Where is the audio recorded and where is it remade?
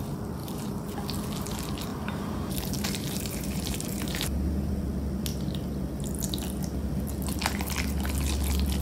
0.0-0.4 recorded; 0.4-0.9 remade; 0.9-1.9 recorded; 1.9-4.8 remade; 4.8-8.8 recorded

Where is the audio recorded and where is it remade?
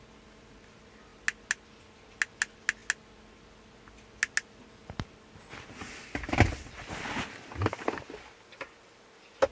0.0-9.5 recorded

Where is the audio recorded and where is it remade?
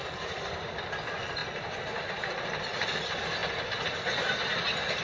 0.0-5.0 recorded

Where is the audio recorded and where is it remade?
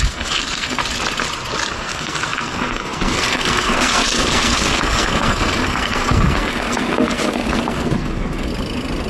0.0-0.8 remade; 0.8-1.7 recorded; 1.7-8.5 remade; 8.5-9.1 recorded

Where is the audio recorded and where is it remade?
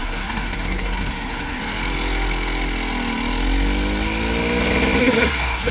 0.0-1.6 remade; 1.6-5.0 recorded; 5.0-5.7 remade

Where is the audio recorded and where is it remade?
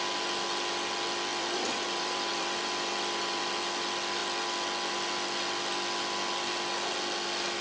0.0-1.3 recorded; 1.3-3.5 remade; 3.5-7.6 recorded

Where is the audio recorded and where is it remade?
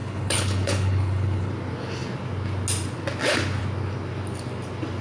0.0-1.5 remade; 1.5-5.0 recorded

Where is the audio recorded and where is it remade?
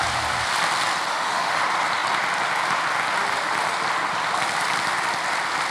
0.0-1.1 recorded; 1.1-1.6 remade; 1.6-5.7 recorded